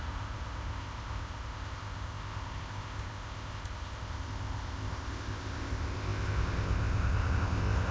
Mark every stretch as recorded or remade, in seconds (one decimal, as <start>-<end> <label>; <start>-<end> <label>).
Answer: 0.0-7.9 remade